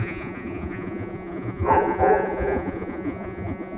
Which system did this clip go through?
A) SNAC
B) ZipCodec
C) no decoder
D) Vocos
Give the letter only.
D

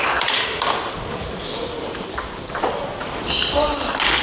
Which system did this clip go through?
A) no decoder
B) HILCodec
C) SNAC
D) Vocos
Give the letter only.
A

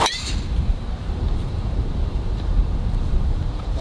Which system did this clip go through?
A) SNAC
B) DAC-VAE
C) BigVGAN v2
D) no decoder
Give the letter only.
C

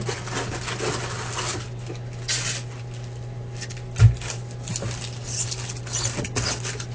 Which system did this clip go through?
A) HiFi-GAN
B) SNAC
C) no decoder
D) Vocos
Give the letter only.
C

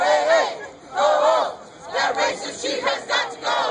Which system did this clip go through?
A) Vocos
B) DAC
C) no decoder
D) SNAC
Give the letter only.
C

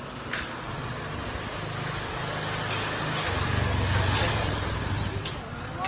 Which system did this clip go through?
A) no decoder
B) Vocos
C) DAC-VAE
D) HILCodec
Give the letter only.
A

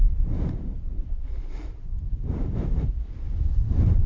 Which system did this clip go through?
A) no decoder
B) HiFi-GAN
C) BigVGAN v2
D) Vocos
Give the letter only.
C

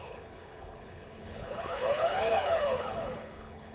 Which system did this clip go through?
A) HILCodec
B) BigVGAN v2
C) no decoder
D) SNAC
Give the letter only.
A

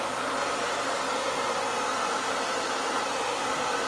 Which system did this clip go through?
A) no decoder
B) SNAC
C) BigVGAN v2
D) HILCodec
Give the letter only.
A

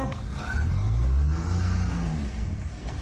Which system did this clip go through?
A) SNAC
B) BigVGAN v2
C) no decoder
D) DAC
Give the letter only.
A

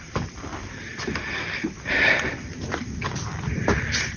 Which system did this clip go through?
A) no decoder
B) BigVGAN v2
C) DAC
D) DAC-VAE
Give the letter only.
A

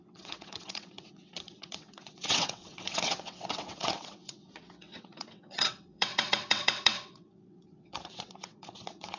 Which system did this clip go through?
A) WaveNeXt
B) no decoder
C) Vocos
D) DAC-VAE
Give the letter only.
A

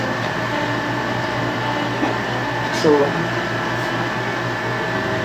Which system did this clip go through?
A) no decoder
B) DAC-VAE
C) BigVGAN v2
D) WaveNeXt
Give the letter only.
C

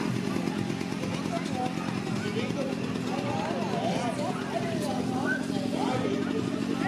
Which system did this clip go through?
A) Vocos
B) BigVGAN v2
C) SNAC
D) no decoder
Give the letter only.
D